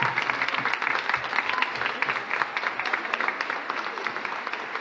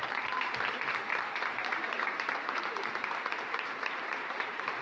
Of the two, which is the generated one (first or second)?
second